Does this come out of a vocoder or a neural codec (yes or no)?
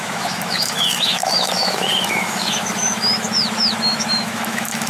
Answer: yes